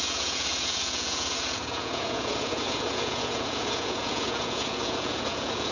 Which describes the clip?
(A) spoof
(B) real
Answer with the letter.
A